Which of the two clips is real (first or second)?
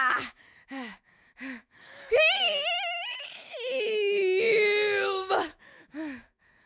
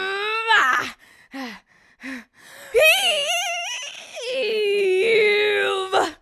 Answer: second